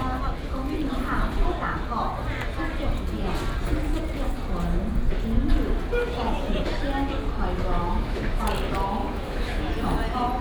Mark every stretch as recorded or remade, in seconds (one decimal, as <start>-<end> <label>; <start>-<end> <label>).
0.0-7.8 recorded; 7.8-8.4 remade; 8.4-9.0 recorded; 9.0-9.7 remade; 9.7-10.4 recorded